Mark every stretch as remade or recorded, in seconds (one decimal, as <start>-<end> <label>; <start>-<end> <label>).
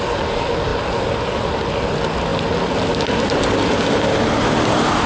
0.0-5.1 recorded